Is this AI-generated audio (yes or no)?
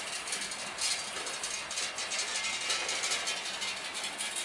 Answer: no